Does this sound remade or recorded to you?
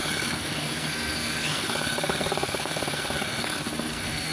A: remade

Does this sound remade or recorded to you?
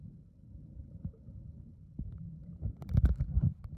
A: recorded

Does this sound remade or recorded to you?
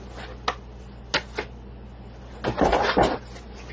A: recorded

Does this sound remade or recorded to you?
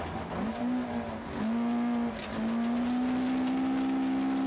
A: recorded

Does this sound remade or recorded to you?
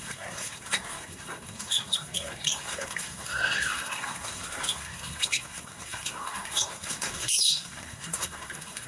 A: remade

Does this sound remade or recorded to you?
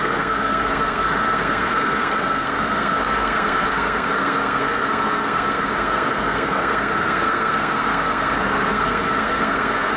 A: remade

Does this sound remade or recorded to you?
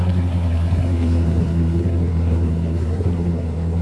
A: remade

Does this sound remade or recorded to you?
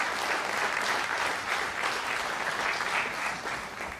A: recorded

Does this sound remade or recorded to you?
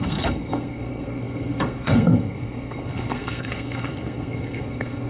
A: remade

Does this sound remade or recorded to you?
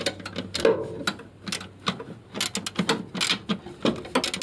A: recorded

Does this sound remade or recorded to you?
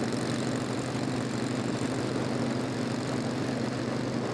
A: recorded